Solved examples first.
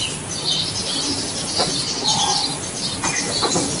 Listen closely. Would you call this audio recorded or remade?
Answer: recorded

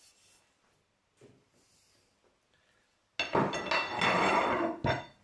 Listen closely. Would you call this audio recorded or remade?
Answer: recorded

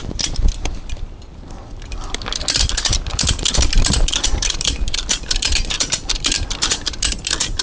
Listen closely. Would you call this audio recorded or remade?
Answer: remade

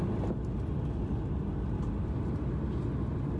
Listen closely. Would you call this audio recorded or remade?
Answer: recorded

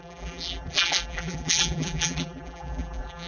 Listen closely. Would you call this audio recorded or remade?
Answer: remade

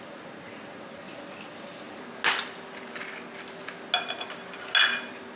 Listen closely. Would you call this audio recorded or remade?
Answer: recorded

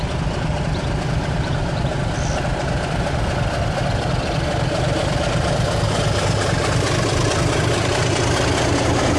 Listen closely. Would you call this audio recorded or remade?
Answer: remade